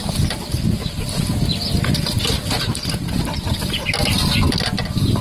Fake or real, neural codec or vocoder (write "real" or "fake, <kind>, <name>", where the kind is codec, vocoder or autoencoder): real